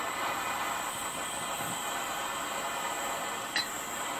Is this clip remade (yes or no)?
no